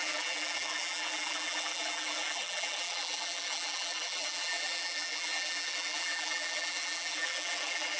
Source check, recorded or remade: remade